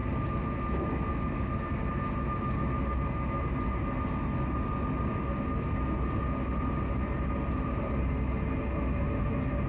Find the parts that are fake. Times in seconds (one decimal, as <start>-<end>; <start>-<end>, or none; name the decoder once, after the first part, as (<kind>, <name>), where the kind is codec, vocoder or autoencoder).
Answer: none